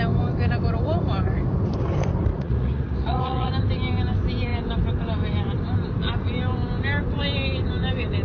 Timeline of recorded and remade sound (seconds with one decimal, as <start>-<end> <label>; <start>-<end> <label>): 0.0-2.3 recorded; 2.3-3.5 remade; 3.5-8.2 recorded